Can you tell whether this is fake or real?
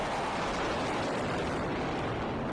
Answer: real